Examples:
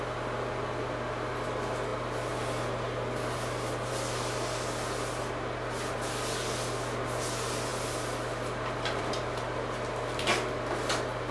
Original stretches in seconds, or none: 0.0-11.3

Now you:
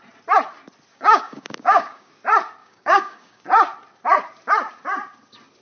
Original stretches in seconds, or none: 0.0-0.9; 2.1-2.6; 3.4-5.6

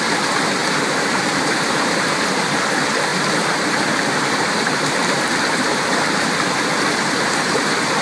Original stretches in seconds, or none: 0.0-0.6; 2.6-3.1

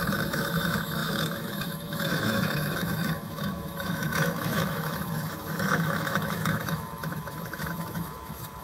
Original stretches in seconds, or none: none